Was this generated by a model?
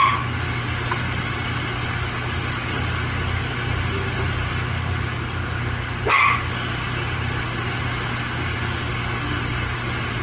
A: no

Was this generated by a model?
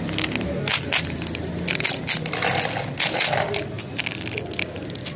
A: no